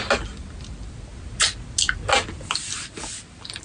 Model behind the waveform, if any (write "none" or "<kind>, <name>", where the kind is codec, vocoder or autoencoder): none